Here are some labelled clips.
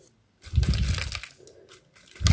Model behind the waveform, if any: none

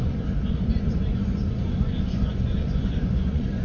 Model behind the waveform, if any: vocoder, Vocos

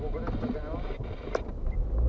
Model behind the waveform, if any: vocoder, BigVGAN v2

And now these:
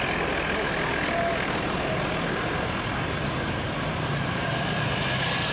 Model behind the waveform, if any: none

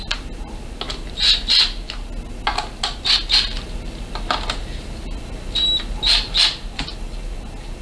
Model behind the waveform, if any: none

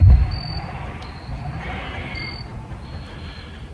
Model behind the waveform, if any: none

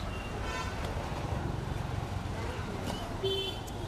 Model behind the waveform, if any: vocoder, BigVGAN v2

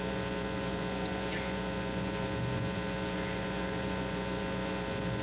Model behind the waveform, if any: vocoder, Vocos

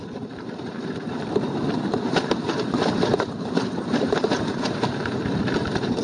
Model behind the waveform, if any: vocoder, BigVGAN v2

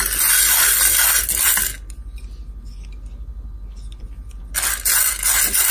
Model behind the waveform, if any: none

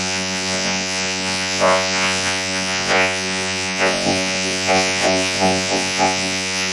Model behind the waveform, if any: vocoder, Vocos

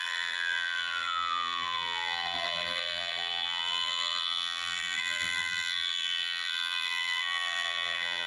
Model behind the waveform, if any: vocoder, BigVGAN v2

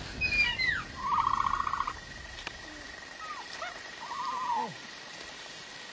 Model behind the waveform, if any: none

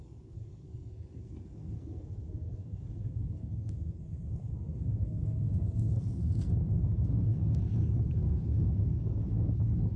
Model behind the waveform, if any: codec, SNAC